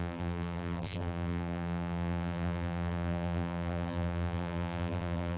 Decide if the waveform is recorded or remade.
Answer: remade